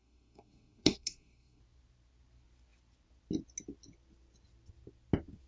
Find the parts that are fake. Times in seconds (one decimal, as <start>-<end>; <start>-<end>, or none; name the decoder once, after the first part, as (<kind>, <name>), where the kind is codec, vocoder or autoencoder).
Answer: 0.0-1.6 (codec, SNAC)